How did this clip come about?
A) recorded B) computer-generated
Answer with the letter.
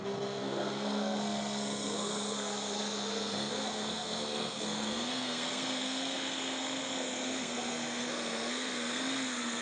B